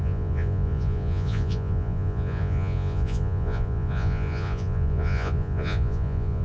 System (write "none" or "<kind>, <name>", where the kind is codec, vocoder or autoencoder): vocoder, Vocos